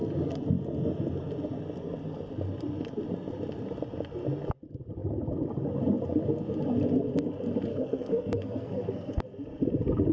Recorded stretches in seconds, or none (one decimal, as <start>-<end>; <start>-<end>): 0.0-7.7; 9.2-10.1